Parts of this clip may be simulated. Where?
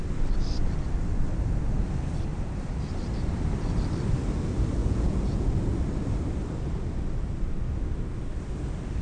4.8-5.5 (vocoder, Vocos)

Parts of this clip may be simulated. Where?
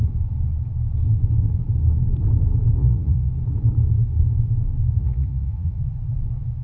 2.8-3.3 (vocoder, Vocos); 5.0-5.8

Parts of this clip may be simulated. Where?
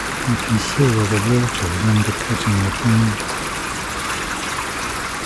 3.6-5.3 (vocoder, Vocos)